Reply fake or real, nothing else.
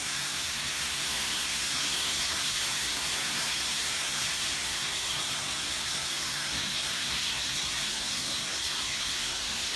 fake